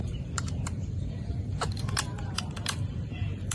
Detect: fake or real fake